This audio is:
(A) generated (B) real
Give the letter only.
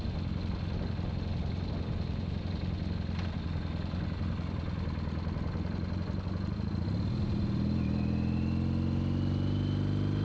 B